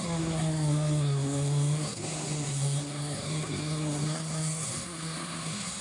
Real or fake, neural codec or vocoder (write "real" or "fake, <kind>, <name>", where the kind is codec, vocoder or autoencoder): fake, codec, SNAC